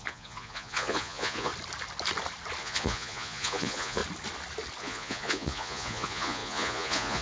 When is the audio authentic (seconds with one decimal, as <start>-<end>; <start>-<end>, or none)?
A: 1.5-2.6; 4.0-4.8